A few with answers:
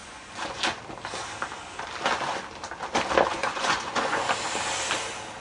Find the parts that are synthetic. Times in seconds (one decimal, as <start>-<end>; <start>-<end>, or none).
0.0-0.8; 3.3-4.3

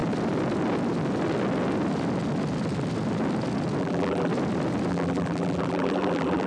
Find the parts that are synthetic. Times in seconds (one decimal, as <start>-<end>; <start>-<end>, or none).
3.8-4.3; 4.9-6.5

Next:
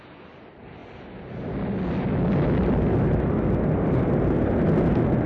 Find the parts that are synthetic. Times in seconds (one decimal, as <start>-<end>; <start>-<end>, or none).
none